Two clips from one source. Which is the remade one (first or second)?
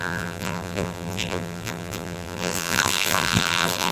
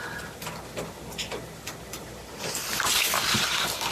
first